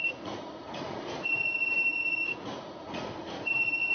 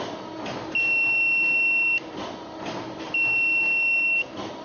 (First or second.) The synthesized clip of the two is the first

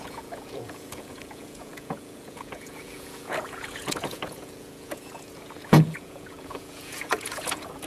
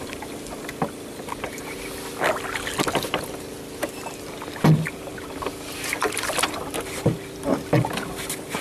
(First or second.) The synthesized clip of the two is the first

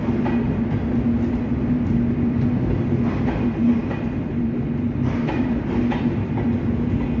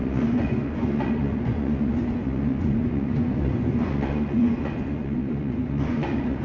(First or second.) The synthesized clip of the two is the second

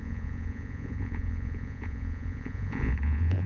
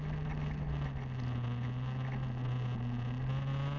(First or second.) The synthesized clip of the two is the first